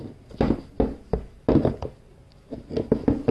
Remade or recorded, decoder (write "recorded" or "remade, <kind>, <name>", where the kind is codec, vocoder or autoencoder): recorded